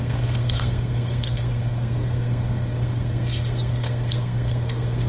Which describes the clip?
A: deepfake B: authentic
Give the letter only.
A